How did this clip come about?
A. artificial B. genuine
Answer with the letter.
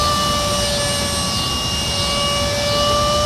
B